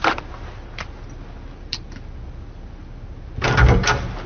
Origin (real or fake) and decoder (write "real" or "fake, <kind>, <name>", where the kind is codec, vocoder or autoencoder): real